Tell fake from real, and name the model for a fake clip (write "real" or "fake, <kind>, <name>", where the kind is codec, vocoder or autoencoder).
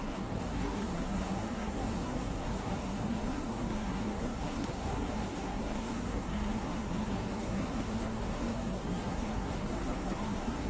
fake, codec, SNAC